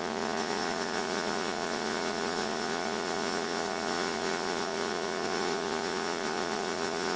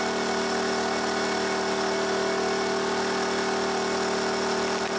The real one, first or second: second